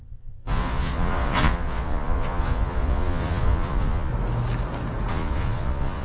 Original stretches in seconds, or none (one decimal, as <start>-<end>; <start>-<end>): 4.1-5.1